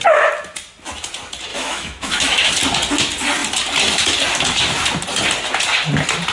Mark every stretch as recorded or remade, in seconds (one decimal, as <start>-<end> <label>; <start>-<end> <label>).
0.0-1.5 recorded; 1.5-2.5 remade; 2.5-6.3 recorded